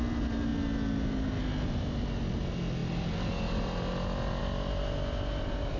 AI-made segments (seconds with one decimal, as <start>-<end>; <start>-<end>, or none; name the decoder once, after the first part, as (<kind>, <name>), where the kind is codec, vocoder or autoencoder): none